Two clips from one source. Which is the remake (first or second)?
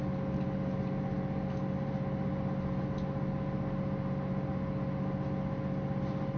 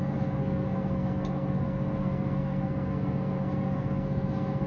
second